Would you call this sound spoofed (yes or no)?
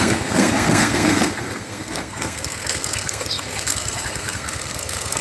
yes